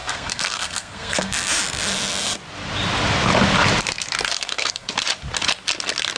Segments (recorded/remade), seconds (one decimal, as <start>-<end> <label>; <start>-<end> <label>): 0.0-1.5 remade; 1.5-4.3 recorded; 4.3-4.9 remade; 4.9-6.2 recorded